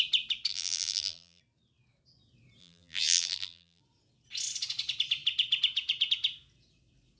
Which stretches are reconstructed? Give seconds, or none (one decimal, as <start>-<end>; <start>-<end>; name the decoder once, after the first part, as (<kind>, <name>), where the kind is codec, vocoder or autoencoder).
0.5-1.4 (vocoder, BigVGAN v2); 2.6-3.8

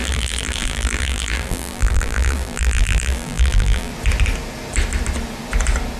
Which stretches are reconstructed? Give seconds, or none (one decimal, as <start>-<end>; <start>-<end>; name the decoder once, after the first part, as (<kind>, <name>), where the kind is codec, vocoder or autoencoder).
0.0-3.9 (vocoder, BigVGAN v2)

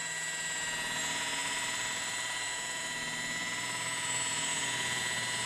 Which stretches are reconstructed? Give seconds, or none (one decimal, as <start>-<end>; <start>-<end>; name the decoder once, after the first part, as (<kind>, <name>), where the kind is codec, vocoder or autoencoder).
1.4-2.8 (vocoder, BigVGAN v2); 4.5-5.0